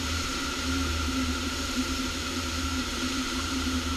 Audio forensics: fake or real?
fake